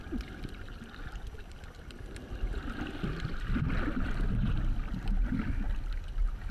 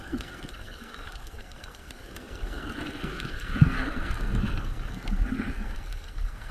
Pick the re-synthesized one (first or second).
second